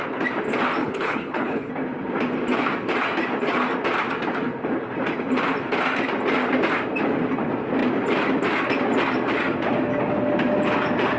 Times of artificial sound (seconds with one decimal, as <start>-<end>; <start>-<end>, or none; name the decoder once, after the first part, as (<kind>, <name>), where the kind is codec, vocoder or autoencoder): 0.8-1.7 (codec, HILCodec)